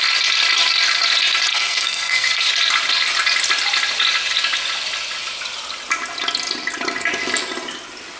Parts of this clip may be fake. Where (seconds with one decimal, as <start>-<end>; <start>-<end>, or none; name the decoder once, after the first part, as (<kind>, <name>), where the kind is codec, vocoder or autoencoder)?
1.5-2.5 (codec, SNAC)